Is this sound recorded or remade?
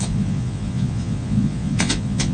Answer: remade